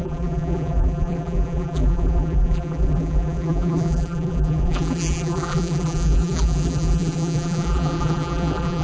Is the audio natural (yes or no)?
no